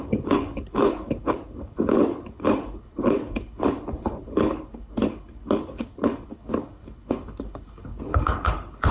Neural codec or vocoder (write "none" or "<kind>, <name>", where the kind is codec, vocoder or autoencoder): codec, HILCodec